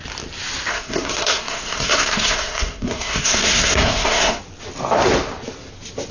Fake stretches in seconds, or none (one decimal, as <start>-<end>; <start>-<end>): 0.7-4.4